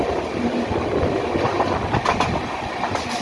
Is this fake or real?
real